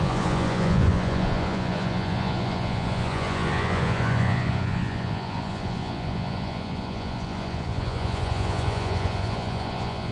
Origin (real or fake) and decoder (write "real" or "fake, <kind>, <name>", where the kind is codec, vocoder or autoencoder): fake, vocoder, Vocos